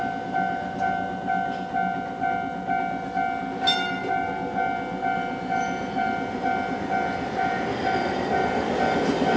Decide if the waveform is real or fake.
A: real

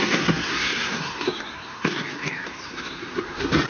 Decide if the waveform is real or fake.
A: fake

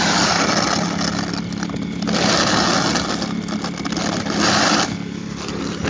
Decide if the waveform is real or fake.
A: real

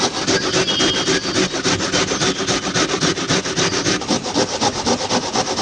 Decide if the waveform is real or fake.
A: real